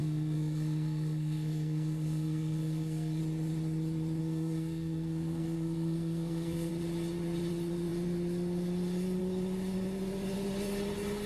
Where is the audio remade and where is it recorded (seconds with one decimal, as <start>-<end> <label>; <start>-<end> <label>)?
0.0-3.2 remade; 3.2-4.2 recorded; 4.2-6.7 remade; 6.7-11.3 recorded

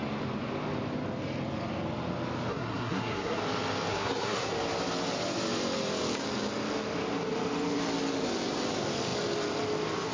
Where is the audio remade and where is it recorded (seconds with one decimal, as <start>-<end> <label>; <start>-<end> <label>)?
0.0-2.5 recorded; 2.5-3.4 remade; 3.4-3.9 recorded; 3.9-4.5 remade; 4.5-10.1 recorded

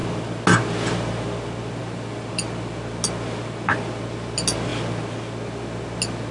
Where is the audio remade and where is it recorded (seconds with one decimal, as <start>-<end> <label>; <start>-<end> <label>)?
0.0-6.3 recorded

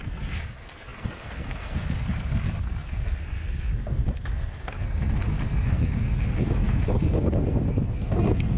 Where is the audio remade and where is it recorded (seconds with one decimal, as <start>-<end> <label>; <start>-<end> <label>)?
0.0-8.6 remade

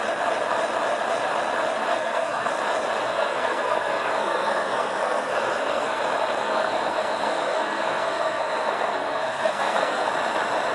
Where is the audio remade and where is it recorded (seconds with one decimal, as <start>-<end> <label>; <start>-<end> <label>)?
0.0-1.9 recorded; 1.9-2.5 remade; 2.5-3.0 recorded; 3.0-6.0 remade; 6.0-6.4 recorded; 6.4-10.1 remade; 10.1-10.7 recorded